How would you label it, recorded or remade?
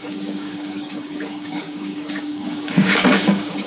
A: remade